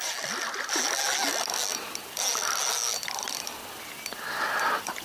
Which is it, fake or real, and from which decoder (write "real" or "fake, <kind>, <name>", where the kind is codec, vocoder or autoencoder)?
real